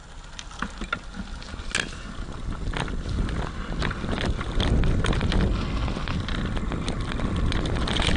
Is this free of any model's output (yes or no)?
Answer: yes